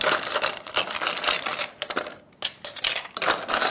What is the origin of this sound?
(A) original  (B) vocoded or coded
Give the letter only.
A